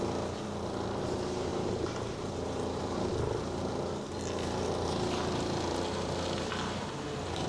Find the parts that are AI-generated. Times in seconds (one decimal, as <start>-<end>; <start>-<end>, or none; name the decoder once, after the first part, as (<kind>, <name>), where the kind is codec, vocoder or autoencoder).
1.5-3.1 (vocoder, BigVGAN v2)

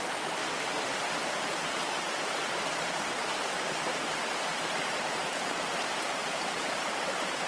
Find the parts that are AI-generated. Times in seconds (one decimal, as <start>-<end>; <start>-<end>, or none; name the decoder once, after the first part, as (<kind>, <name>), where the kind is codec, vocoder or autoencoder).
0.0-0.4 (vocoder, BigVGAN v2); 0.9-7.5

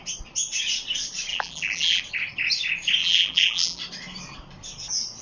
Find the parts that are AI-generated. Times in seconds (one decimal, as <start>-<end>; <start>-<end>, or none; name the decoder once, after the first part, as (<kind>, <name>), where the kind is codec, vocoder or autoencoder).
1.3-2.0 (vocoder, BigVGAN v2); 3.0-3.8

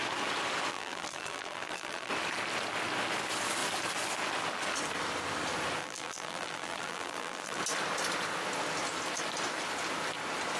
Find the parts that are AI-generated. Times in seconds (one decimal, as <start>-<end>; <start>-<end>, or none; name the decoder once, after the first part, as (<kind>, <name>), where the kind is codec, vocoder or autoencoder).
0.7-2.1 (vocoder, BigVGAN v2); 5.8-7.6

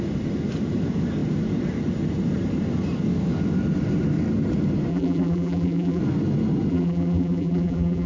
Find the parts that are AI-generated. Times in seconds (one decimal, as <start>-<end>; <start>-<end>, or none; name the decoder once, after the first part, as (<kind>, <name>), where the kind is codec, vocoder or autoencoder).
4.9-6.0 (vocoder, BigVGAN v2); 6.7-8.1

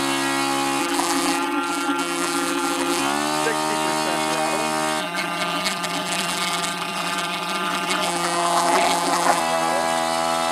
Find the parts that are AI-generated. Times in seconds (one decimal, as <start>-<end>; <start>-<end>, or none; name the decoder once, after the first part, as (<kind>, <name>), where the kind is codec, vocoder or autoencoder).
0.8-3.0 (vocoder, BigVGAN v2); 5.0-9.4

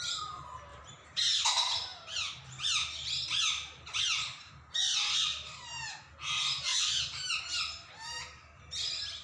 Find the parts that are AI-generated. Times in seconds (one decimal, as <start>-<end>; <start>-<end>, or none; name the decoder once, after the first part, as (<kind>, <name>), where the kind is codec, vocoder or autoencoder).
0.7-1.4 (vocoder, BigVGAN v2); 6.7-7.4

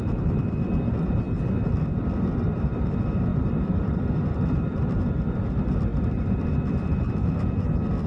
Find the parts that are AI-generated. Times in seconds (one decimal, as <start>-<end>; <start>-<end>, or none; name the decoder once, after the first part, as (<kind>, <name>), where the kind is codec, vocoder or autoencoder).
0.0-0.7 (vocoder, BigVGAN v2); 2.3-8.1